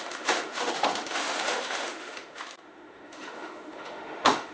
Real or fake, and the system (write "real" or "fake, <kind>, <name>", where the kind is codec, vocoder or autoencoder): fake, autoencoder, DAC-VAE